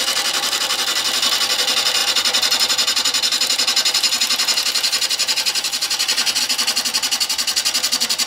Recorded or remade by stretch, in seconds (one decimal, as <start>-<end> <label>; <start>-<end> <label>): 0.0-2.0 recorded; 2.0-6.4 remade; 6.4-8.3 recorded